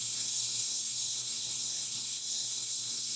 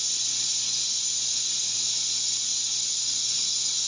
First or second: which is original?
second